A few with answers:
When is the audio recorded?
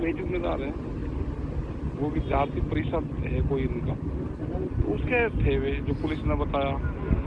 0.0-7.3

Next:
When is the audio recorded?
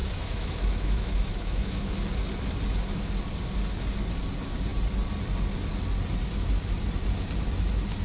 1.9-8.0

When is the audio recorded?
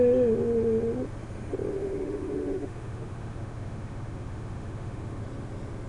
0.0-1.7; 5.2-5.9